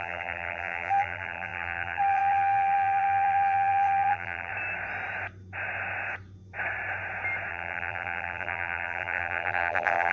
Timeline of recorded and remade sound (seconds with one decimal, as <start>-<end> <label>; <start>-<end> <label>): 0.0-4.5 remade; 4.5-7.5 recorded; 7.5-10.1 remade